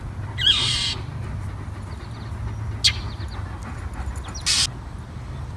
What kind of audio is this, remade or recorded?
recorded